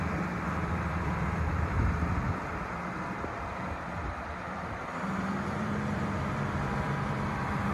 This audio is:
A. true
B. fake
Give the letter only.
B